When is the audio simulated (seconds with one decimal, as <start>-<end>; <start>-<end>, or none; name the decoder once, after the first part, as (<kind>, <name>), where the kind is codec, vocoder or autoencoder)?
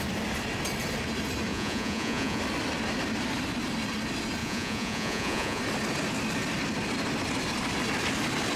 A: 1.5-2.4 (vocoder, Vocos); 4.4-5.6